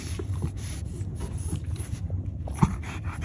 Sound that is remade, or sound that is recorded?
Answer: remade